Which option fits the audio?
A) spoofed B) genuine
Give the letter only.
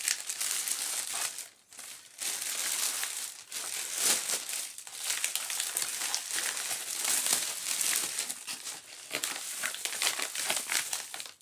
B